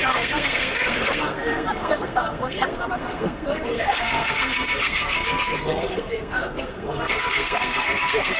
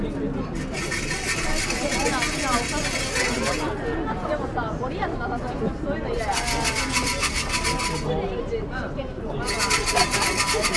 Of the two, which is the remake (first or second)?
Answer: first